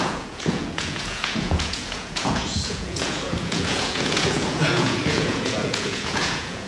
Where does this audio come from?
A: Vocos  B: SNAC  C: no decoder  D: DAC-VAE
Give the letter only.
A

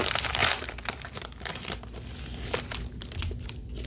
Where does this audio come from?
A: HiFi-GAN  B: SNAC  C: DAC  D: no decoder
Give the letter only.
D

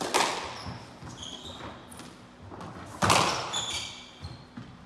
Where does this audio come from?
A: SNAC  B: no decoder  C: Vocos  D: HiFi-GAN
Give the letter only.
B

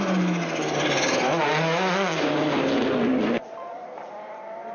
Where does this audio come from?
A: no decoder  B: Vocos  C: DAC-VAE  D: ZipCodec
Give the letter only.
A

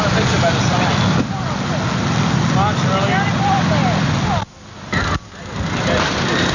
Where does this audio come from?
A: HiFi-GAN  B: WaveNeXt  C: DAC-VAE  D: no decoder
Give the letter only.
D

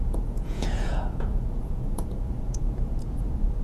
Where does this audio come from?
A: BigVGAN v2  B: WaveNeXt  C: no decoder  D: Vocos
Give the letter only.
D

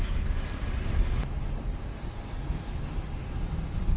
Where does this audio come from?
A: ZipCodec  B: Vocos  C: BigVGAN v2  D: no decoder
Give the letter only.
D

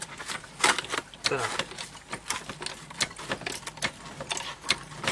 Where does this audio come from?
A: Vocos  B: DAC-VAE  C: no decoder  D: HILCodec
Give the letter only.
C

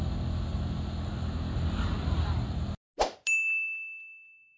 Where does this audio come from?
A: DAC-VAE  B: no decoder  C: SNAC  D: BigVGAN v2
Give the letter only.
B